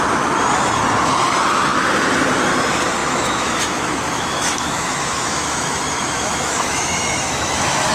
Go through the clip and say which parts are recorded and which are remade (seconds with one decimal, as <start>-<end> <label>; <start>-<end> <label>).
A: 0.0-3.0 recorded; 3.0-7.9 remade